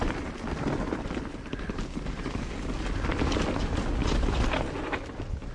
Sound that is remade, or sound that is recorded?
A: recorded